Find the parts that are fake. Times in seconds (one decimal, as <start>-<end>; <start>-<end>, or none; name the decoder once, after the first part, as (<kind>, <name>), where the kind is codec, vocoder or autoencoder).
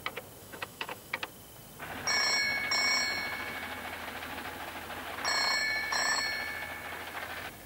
0.4-1.1 (autoencoder, DAC-VAE); 5.6-6.2